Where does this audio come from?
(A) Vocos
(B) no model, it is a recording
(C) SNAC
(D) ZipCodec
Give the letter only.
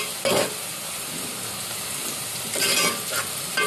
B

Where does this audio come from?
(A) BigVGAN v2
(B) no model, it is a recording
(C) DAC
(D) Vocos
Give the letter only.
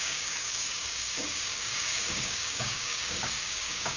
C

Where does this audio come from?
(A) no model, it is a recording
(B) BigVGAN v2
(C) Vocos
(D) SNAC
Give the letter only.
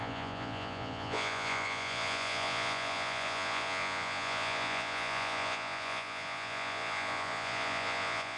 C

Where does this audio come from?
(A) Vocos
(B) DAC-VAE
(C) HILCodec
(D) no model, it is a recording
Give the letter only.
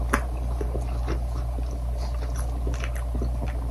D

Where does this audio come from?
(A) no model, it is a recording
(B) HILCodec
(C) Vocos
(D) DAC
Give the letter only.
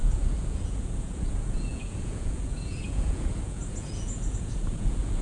C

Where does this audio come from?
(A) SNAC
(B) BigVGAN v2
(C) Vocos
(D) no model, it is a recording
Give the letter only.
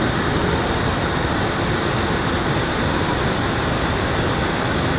D